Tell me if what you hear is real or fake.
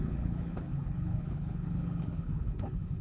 fake